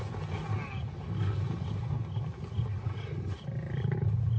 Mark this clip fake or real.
real